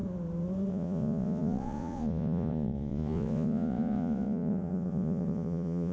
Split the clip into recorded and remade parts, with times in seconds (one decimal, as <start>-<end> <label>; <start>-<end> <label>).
0.0-0.7 recorded; 0.7-5.9 remade

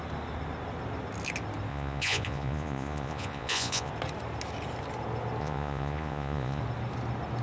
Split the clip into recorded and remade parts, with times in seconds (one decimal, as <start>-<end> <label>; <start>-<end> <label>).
0.0-1.7 recorded; 1.7-3.9 remade; 3.9-5.4 recorded; 5.4-6.6 remade; 6.6-7.4 recorded

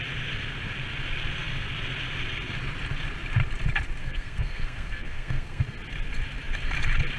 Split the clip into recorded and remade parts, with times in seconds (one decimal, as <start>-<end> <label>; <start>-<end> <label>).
0.0-4.0 recorded; 4.0-5.6 remade; 5.6-7.2 recorded

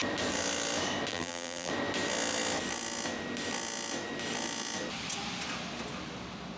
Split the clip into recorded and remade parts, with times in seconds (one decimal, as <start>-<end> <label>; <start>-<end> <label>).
0.0-1.1 recorded; 1.1-1.7 remade; 1.7-6.6 recorded

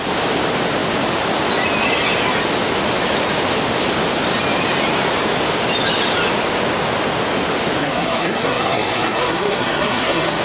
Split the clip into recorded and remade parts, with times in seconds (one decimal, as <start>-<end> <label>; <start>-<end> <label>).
0.0-7.8 recorded; 7.8-10.4 remade

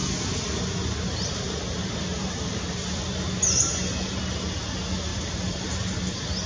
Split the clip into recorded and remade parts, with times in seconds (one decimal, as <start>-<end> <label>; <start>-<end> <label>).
0.0-2.1 recorded; 2.1-2.8 remade; 2.8-5.1 recorded; 5.1-5.7 remade; 5.7-6.5 recorded